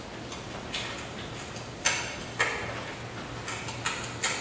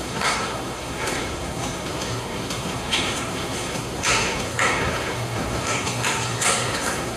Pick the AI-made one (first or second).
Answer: second